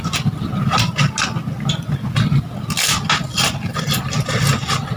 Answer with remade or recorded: recorded